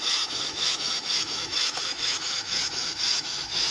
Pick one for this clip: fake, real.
fake